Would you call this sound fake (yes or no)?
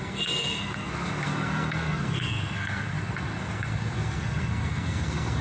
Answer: yes